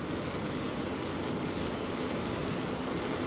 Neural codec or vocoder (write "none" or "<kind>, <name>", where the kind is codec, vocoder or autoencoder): none